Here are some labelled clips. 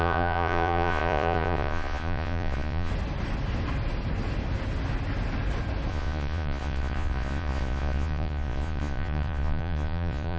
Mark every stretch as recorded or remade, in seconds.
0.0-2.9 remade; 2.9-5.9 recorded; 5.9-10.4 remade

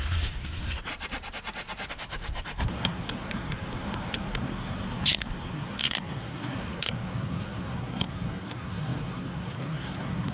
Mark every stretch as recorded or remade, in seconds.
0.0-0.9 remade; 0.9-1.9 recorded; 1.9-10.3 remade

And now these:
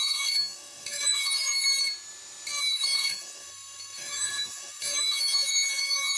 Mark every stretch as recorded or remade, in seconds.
0.0-1.7 remade; 1.7-2.6 recorded; 2.6-6.2 remade

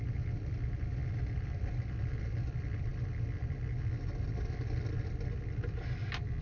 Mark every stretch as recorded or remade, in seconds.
0.0-6.4 recorded